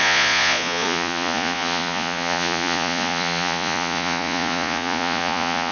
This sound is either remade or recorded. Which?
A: remade